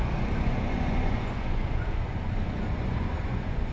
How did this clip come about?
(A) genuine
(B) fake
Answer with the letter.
B